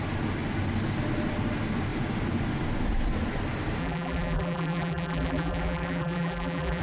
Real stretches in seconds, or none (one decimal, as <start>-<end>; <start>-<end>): 0.0-3.8